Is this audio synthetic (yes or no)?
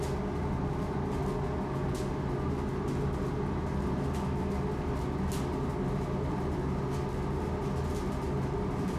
no